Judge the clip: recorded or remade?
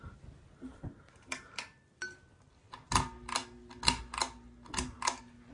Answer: recorded